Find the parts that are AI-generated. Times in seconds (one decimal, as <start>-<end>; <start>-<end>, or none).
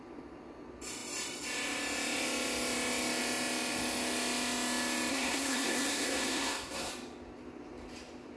5.1-6.9